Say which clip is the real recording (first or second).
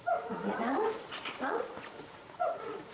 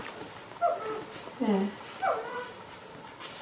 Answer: second